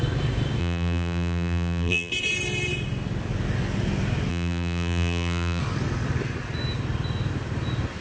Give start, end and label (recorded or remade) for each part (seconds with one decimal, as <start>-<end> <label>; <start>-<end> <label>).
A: 0.0-0.6 recorded; 0.6-2.1 remade; 2.1-4.3 recorded; 4.3-5.6 remade; 5.6-8.0 recorded